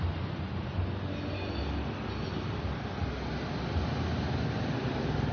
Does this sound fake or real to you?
real